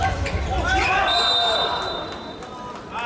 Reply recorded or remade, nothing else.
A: recorded